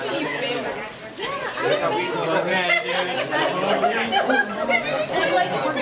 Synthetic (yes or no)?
no